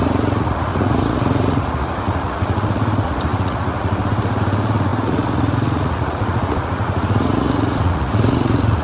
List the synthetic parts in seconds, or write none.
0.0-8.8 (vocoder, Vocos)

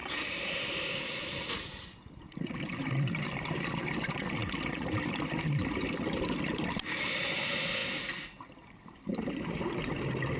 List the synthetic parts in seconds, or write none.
0.0-0.5 (vocoder, BigVGAN v2)

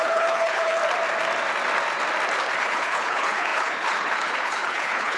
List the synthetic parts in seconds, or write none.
0.0-0.8 (codec, HILCodec); 2.6-5.2

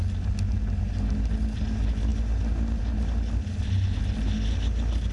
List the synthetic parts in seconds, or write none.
none

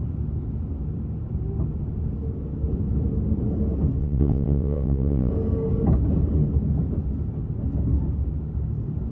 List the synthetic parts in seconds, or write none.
4.0-5.3 (vocoder, WaveNeXt)